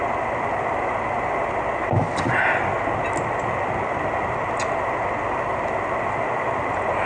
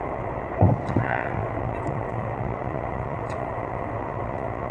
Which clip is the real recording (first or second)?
first